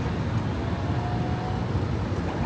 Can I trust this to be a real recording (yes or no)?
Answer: yes